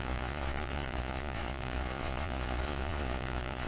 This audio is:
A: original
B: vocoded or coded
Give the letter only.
B